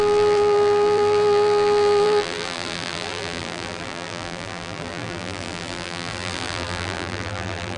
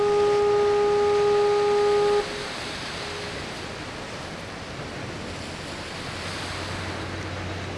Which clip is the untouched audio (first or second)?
second